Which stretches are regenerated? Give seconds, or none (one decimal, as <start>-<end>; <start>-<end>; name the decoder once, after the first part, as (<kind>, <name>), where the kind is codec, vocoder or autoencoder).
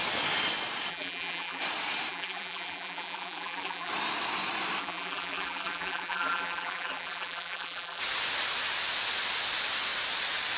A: 0.9-1.6 (vocoder, BigVGAN v2); 2.1-3.9; 4.8-8.0